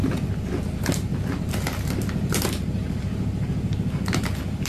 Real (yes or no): yes